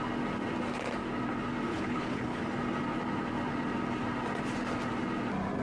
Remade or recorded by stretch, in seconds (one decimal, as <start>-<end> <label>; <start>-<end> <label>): 0.0-1.7 recorded; 1.7-2.4 remade; 2.4-5.6 recorded